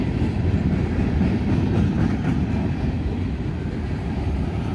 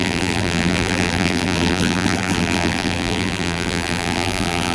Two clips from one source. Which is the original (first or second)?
first